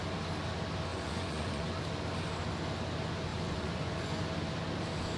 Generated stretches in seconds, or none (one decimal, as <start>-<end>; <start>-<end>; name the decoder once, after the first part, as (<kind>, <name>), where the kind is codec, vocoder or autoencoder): 0.9-1.7 (vocoder, Vocos); 3.3-4.2